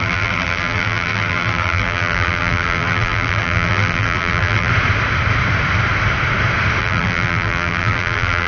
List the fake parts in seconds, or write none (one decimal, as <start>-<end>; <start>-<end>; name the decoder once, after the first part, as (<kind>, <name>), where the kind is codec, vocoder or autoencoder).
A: 0.0-4.7 (vocoder, BigVGAN v2); 6.8-8.5